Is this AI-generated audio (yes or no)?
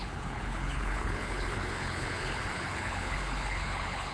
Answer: yes